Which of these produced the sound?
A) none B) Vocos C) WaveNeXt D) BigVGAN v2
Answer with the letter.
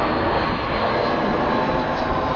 A